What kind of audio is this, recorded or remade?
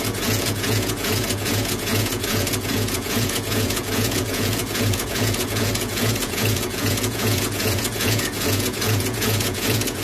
remade